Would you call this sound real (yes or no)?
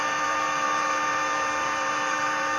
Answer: no